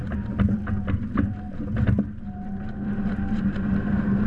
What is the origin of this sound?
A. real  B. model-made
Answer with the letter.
A